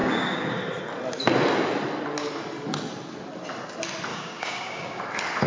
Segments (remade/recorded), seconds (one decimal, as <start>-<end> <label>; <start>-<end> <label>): 0.0-0.6 remade; 0.6-4.1 recorded; 4.1-5.0 remade; 5.0-5.5 recorded